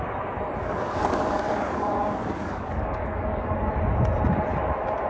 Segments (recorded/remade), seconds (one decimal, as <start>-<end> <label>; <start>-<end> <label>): 0.0-0.6 recorded; 0.6-3.7 remade; 3.7-5.1 recorded

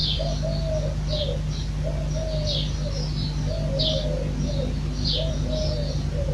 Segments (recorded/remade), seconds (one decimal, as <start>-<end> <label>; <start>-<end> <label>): 0.0-6.3 recorded

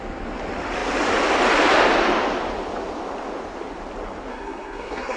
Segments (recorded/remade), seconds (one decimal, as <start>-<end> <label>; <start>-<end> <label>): 0.0-4.3 recorded; 4.3-5.2 remade

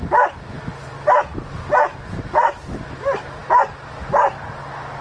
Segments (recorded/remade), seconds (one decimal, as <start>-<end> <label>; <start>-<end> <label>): 0.0-5.0 recorded

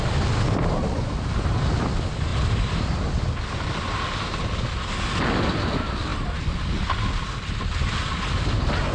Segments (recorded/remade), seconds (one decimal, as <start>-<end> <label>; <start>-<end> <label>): 0.0-8.9 recorded

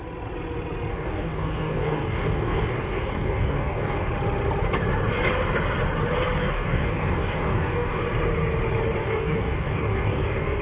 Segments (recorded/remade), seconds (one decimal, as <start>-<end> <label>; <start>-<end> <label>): 0.0-0.9 recorded; 0.9-4.1 remade; 4.1-6.4 recorded; 6.4-8.0 remade; 8.0-9.0 recorded; 9.0-10.6 remade

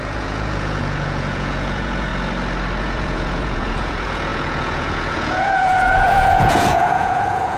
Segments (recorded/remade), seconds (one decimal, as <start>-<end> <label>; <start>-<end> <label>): 0.0-2.1 remade; 2.1-2.8 recorded; 2.8-7.6 remade